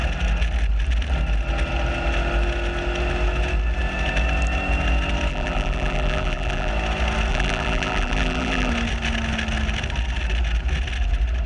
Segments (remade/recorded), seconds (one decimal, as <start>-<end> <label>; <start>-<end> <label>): 0.0-5.3 recorded; 5.3-6.7 remade; 6.7-7.3 recorded; 7.3-8.7 remade; 8.7-11.5 recorded

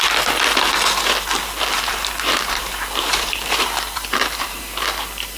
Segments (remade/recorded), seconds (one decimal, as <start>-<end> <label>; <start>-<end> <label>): 0.0-1.4 recorded; 1.4-4.6 remade; 4.6-5.4 recorded